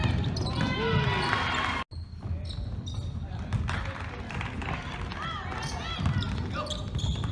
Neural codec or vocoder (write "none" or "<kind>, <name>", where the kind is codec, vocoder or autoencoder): none